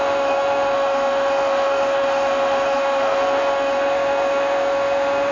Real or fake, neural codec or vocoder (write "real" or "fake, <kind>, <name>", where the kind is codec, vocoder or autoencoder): fake, autoencoder, DAC-VAE